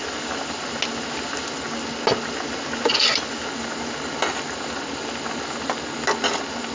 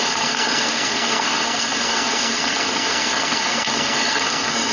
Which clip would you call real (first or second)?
first